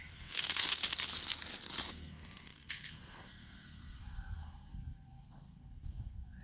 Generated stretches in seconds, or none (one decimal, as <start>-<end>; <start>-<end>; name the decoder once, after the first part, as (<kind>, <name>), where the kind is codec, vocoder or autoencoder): 0.0-0.8 (codec, SNAC); 1.9-6.4